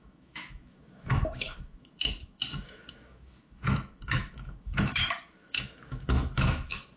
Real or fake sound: fake